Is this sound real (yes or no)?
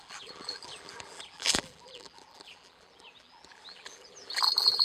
no